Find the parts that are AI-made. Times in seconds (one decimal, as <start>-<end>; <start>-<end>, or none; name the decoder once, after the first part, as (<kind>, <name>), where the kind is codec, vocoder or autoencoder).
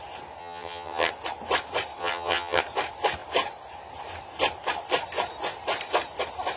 0.4-1.1 (vocoder, HiFi-GAN); 2.0-2.6